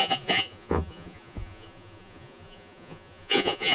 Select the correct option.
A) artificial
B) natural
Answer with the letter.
A